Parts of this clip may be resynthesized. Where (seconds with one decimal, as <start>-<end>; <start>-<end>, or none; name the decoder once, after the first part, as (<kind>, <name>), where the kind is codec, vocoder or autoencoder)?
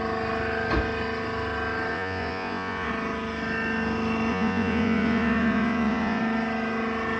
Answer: 1.9-2.9 (vocoder, Vocos); 4.3-6.2